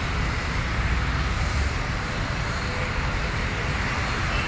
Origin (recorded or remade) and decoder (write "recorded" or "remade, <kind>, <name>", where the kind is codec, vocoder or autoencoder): remade, vocoder, BigVGAN v2